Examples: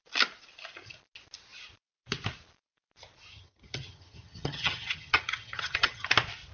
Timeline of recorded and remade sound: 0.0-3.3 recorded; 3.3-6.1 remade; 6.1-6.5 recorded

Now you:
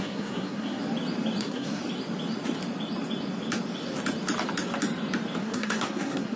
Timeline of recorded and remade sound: 0.0-0.8 remade; 0.8-1.4 recorded; 1.4-1.8 remade; 1.8-5.4 recorded; 5.4-6.4 remade

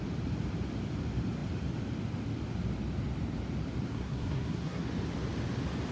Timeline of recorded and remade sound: 0.0-3.9 recorded; 3.9-4.8 remade; 4.8-5.9 recorded

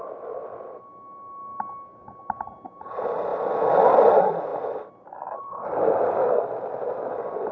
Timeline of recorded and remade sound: 0.0-7.5 recorded

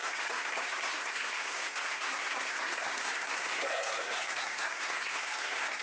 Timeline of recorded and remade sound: 0.0-5.8 remade

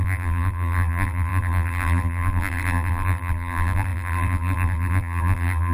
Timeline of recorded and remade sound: 0.0-5.7 remade

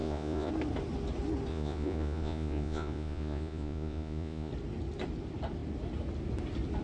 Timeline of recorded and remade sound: 0.0-0.5 remade; 0.5-1.5 recorded; 1.5-4.5 remade; 4.5-6.8 recorded

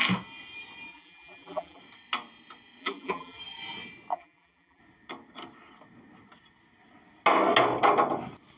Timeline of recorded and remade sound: 0.0-0.9 recorded; 0.9-1.8 remade; 1.8-2.8 recorded; 2.8-3.4 remade; 3.4-4.1 recorded; 4.1-4.8 remade; 4.8-8.6 recorded